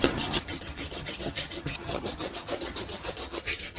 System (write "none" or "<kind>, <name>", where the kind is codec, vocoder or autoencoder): vocoder, HiFi-GAN